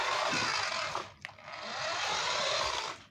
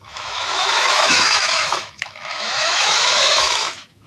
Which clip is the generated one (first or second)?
second